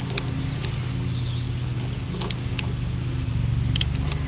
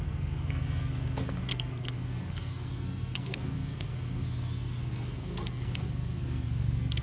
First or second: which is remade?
second